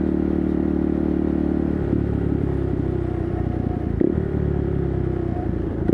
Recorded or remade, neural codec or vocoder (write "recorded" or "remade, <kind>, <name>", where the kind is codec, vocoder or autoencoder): remade, vocoder, BigVGAN v2